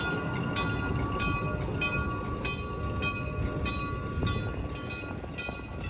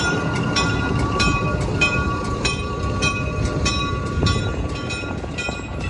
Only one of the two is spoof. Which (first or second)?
second